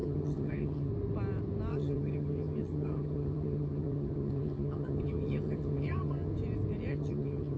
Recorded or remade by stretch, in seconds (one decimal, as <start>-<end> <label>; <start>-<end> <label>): 0.0-0.9 remade; 0.9-1.7 recorded; 1.7-6.3 remade; 6.3-6.9 recorded; 6.9-7.6 remade